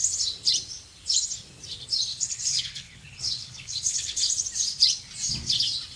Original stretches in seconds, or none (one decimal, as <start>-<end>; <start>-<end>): 0.0-2.1; 4.3-6.0